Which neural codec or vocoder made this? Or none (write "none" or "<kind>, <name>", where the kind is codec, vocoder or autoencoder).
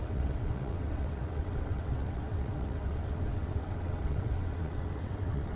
vocoder, WaveNeXt